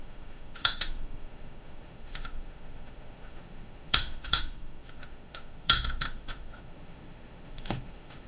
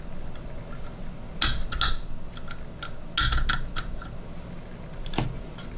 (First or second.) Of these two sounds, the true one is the second